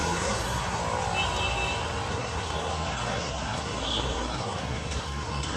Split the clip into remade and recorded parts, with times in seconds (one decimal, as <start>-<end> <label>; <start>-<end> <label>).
0.0-0.8 remade; 0.8-2.1 recorded; 2.1-5.6 remade